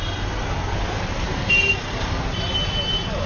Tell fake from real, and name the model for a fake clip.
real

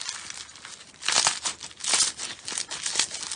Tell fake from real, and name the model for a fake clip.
real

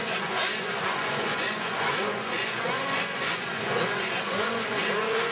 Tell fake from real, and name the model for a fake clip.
fake, vocoder, Vocos